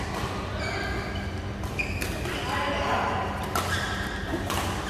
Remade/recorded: recorded